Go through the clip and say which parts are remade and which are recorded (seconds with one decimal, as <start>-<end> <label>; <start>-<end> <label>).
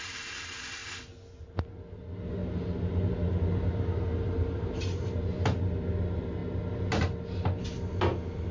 0.0-2.4 recorded; 2.4-5.6 remade; 5.6-8.5 recorded